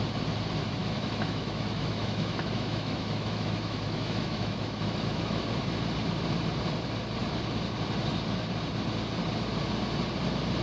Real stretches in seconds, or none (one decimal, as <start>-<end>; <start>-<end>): 0.0-0.8; 5.4-10.6